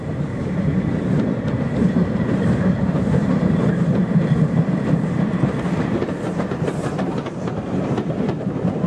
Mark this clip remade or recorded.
remade